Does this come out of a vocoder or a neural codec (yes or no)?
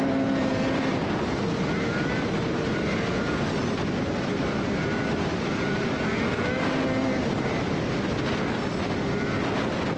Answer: no